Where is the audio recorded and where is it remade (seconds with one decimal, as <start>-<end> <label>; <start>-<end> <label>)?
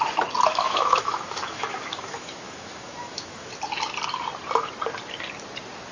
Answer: 0.0-0.5 recorded; 0.5-3.5 remade; 3.5-5.9 recorded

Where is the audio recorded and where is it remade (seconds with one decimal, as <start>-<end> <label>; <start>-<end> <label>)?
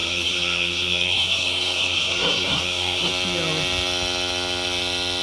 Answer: 0.0-3.1 remade; 3.1-5.2 recorded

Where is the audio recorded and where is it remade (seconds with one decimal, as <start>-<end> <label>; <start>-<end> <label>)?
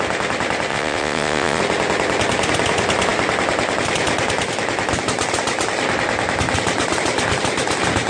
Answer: 0.0-0.7 recorded; 0.7-1.6 remade; 1.6-8.1 recorded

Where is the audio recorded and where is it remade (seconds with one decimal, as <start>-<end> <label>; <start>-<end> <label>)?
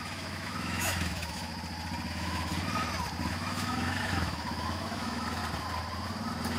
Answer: 0.0-1.5 remade; 1.5-2.1 recorded; 2.1-2.5 remade; 2.5-3.3 recorded; 3.3-5.4 remade; 5.4-6.6 recorded